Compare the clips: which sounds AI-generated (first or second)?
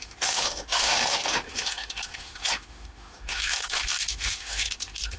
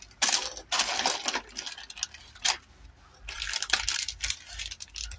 first